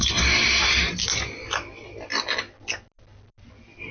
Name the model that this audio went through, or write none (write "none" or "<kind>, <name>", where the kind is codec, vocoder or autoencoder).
none